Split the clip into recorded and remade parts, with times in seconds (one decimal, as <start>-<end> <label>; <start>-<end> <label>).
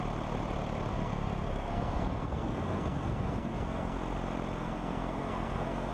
0.0-0.9 recorded; 0.9-4.0 remade; 4.0-4.6 recorded; 4.6-5.9 remade